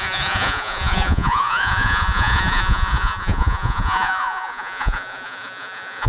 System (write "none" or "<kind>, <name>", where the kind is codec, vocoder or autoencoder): vocoder, Vocos